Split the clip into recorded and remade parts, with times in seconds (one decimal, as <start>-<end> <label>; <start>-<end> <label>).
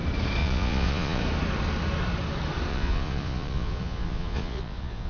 0.0-0.4 recorded; 0.4-1.2 remade; 1.2-2.7 recorded; 2.7-5.1 remade